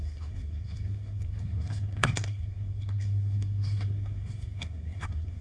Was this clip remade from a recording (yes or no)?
yes